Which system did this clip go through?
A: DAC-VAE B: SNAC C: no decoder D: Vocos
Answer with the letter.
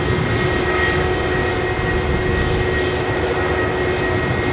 C